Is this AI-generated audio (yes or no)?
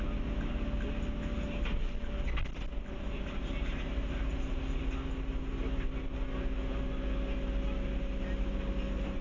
no